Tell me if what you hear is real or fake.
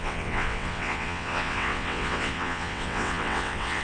fake